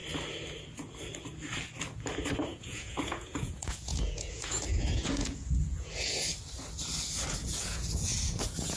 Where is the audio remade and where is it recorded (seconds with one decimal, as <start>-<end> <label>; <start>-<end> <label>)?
0.0-2.5 recorded; 2.5-6.3 remade; 6.3-7.4 recorded; 7.4-8.8 remade